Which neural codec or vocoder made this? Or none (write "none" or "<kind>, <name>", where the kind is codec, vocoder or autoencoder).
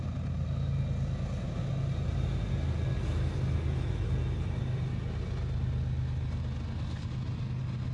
none